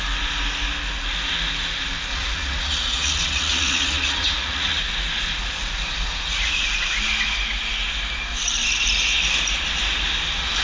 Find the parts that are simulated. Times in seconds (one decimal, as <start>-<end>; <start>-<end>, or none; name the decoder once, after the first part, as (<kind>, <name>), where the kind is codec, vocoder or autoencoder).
2.1-4.8 (vocoder, Vocos)

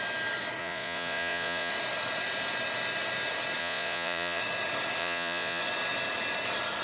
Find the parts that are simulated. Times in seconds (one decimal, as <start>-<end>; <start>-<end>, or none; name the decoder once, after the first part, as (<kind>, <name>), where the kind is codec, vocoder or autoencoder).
0.6-1.7 (vocoder, Vocos); 3.6-4.4; 5.0-5.6

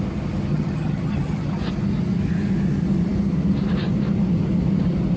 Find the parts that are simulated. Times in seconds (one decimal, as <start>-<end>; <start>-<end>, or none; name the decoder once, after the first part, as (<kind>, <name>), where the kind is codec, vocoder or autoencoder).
0.5-1.6 (vocoder, HiFi-GAN)

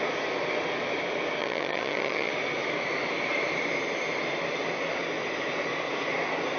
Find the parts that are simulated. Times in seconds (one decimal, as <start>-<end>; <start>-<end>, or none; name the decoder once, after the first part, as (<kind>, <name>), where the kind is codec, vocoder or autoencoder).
1.4-2.3 (vocoder, HiFi-GAN)

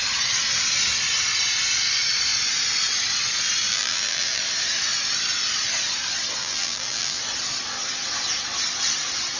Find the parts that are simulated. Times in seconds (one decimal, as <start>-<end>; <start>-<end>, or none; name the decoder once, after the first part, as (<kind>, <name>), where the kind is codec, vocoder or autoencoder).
3.7-4.4 (vocoder, BigVGAN v2); 6.4-7.2